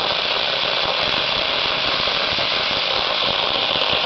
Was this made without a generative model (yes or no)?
yes